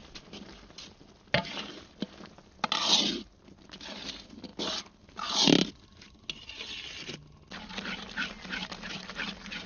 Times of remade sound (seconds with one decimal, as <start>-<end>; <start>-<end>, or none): none